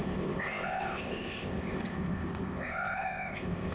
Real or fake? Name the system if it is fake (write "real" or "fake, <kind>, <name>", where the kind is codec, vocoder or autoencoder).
fake, codec, ZipCodec